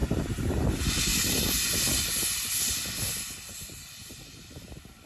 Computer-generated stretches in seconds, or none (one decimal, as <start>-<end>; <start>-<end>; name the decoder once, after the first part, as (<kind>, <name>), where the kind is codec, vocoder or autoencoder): 0.0-0.5 (vocoder, BigVGAN v2); 1.1-1.8